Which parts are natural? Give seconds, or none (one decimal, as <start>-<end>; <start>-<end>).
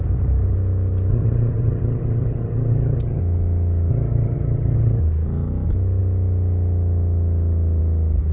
0.0-1.1; 3.2-3.9; 5.0-8.3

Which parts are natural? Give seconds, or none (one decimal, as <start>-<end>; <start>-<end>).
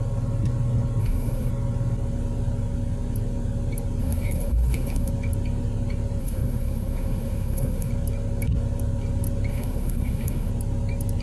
0.0-1.0; 1.5-4.0; 5.1-6.2; 7.9-9.5; 10.5-11.2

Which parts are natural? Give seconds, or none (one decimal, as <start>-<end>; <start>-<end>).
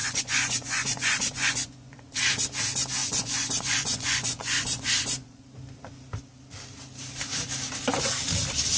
2.1-3.0; 5.4-8.8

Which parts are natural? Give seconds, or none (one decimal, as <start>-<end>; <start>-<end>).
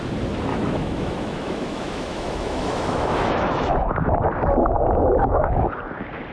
0.0-0.5; 4.1-5.2; 5.8-6.3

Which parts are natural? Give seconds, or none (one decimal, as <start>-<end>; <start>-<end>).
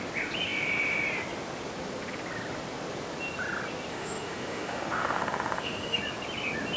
0.0-3.9; 6.0-6.8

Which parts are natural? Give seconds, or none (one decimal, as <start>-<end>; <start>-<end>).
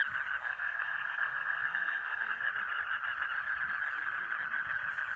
0.0-0.4; 2.5-5.2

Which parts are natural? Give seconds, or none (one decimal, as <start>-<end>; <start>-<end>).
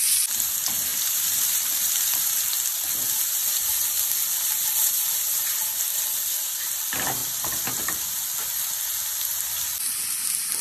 0.0-0.9; 2.3-10.6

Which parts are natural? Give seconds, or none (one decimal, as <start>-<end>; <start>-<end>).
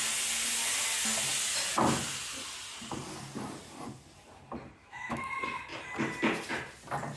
0.0-4.8; 5.3-7.2